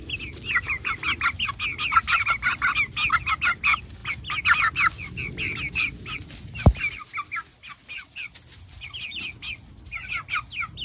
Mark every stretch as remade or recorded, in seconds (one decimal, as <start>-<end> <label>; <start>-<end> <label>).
0.0-10.8 recorded